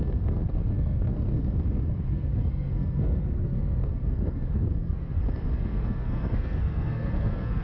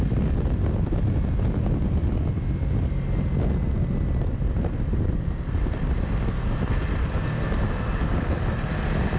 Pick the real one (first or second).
second